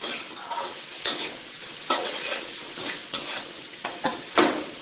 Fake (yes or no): yes